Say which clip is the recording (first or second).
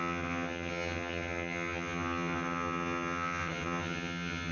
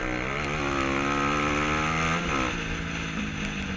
second